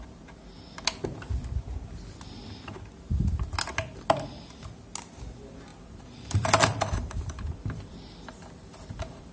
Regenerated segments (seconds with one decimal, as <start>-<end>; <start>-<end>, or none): 5.7-9.3